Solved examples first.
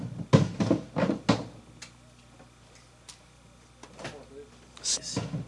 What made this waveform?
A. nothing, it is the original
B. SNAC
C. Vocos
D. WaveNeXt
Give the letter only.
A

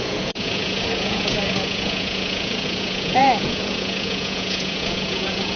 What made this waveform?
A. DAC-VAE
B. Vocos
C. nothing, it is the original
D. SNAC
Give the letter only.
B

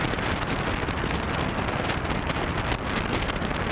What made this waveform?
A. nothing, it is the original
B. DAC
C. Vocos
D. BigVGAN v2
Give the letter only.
A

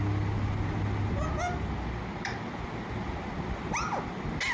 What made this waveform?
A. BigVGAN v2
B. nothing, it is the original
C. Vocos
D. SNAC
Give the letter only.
B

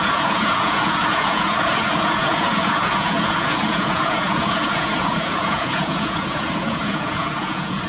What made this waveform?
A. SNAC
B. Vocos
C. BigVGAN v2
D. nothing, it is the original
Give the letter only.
B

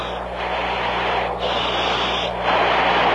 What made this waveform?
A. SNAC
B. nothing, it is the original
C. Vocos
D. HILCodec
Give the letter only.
B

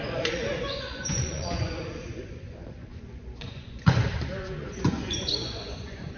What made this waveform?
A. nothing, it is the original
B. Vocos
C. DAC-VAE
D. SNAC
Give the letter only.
B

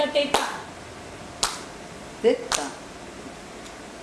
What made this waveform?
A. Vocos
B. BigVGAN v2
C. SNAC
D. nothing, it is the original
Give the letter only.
D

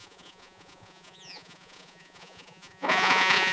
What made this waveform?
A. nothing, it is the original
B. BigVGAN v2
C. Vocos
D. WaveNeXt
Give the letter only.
C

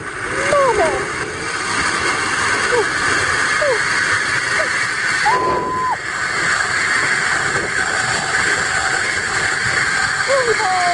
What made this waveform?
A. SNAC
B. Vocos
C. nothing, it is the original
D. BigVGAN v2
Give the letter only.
C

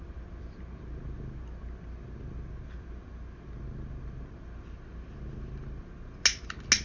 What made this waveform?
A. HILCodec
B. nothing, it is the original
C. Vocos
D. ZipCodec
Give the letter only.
B